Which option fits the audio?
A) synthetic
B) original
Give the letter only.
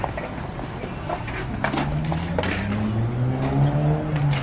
B